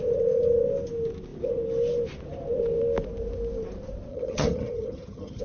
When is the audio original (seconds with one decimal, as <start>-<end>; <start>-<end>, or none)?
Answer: 0.0-4.1